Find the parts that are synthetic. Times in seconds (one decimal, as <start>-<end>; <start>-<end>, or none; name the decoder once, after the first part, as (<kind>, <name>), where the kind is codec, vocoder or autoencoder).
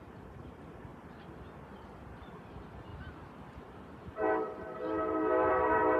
0.0-0.9 (vocoder, BigVGAN v2); 2.3-2.9; 3.6-6.0